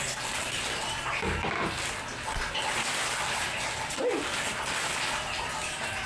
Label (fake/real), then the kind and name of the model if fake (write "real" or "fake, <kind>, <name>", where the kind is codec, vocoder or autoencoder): real